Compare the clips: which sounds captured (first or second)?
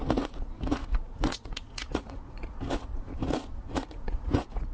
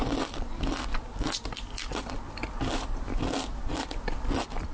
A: second